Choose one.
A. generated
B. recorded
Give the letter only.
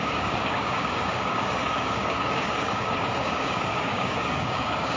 A